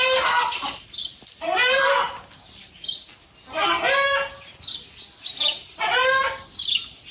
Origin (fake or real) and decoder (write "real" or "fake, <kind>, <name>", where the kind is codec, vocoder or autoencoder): real